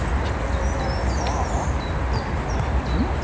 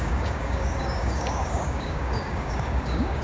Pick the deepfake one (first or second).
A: second